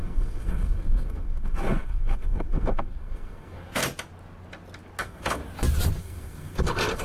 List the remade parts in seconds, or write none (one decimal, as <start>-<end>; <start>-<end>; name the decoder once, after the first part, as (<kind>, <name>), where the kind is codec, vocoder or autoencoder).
0.0-3.8 (codec, SNAC); 5.0-5.4; 6.0-7.0